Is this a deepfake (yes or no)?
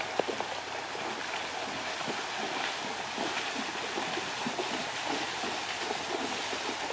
no